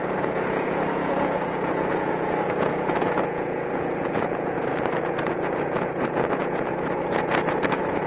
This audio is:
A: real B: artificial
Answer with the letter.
B